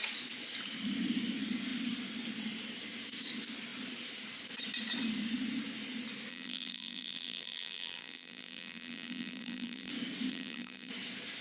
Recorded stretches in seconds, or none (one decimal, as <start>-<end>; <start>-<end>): 0.0-6.3; 9.9-10.3; 10.9-11.4